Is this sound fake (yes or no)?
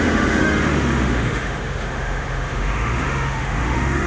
yes